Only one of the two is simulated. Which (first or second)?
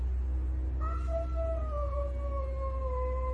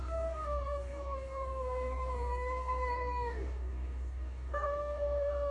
second